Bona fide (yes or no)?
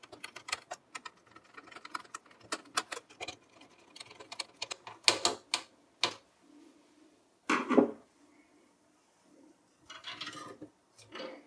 yes